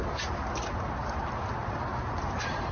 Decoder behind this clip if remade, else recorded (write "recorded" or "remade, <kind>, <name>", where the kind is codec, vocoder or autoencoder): recorded